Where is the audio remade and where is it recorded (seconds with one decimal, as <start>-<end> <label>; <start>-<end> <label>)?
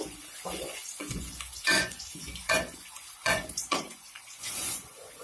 0.0-5.2 remade